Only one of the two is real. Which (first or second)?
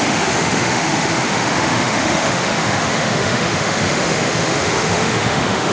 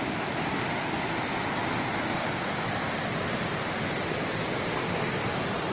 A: second